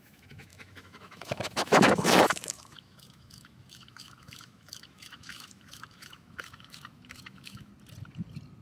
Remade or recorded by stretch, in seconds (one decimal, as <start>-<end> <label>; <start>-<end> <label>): 0.0-7.7 remade; 7.7-8.6 recorded

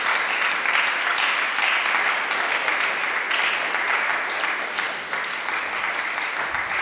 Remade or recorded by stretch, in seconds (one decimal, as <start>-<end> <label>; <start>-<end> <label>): 0.0-6.8 recorded

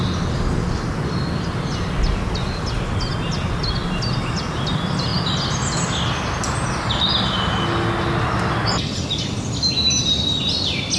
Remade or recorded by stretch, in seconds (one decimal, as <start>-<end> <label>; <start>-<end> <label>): 0.0-11.0 recorded

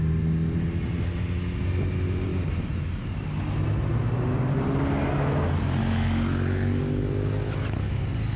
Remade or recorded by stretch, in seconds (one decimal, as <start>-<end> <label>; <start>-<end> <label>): 0.0-5.8 recorded; 5.8-6.8 remade; 6.8-8.4 recorded

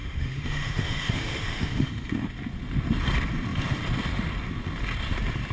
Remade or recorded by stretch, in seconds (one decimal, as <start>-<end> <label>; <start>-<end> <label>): 0.0-2.3 remade; 2.3-5.5 recorded

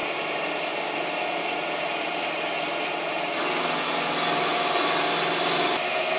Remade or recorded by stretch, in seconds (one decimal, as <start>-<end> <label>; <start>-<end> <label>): 0.0-6.2 recorded